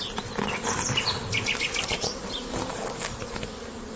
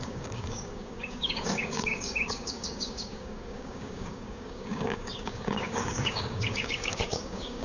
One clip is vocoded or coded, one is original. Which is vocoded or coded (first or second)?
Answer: second